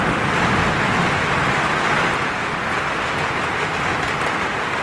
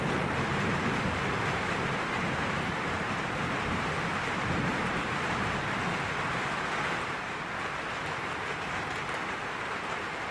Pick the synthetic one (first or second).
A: second